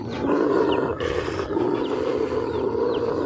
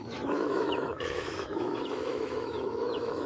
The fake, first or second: second